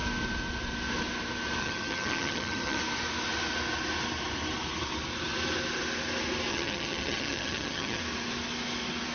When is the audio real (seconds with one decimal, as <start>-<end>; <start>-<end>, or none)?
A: 0.0-1.6; 2.8-6.5; 8.0-9.1